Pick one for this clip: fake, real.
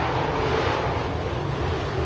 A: fake